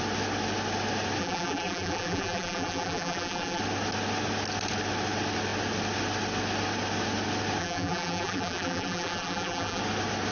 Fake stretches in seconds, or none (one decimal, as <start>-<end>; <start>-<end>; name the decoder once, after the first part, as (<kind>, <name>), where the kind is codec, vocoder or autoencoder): 1.2-3.6 (vocoder, BigVGAN v2); 7.6-9.8